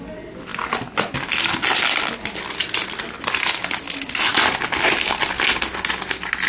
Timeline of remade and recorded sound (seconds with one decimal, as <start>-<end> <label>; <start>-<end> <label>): 0.0-6.5 recorded